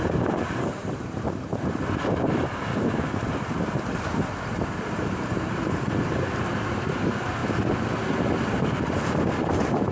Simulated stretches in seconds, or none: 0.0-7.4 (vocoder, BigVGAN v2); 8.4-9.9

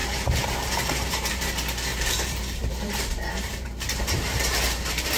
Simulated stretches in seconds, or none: 0.0-1.5 (vocoder, BigVGAN v2); 1.9-5.2

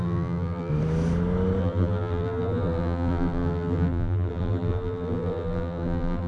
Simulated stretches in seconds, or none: 0.0-0.7 (vocoder, BigVGAN v2); 1.6-6.3

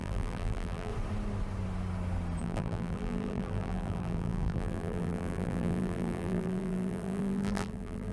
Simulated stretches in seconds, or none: 0.0-0.9 (vocoder, BigVGAN v2); 2.4-8.1

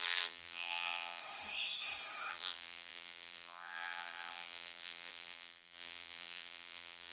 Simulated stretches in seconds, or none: 0.0-1.2 (vocoder, BigVGAN v2); 2.3-7.1

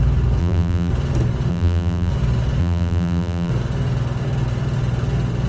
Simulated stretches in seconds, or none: 0.4-0.9 (vocoder, BigVGAN v2); 1.5-2.1; 2.6-3.5